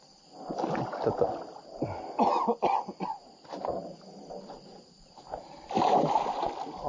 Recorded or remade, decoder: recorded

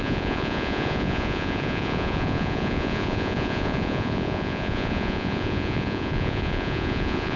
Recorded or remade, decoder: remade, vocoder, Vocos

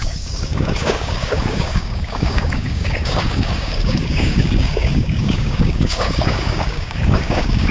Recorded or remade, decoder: remade, codec, DAC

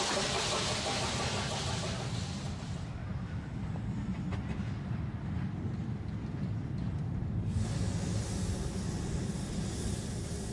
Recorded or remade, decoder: recorded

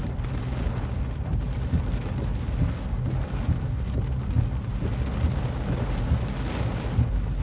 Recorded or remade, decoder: recorded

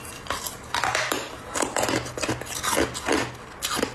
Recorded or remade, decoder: recorded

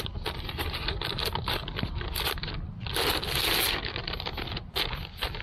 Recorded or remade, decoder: recorded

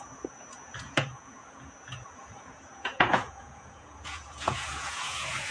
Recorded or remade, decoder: remade, vocoder, Vocos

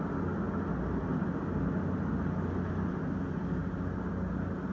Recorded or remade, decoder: recorded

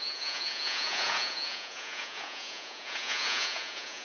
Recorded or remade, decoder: remade, vocoder, Vocos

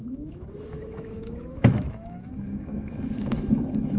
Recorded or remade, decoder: remade, autoencoder, DAC-VAE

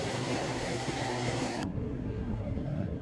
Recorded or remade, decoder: remade, codec, SNAC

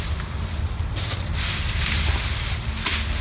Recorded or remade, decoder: recorded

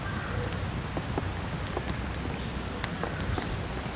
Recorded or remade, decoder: recorded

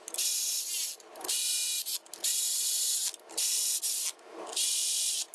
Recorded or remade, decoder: recorded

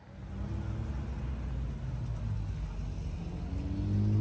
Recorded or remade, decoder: recorded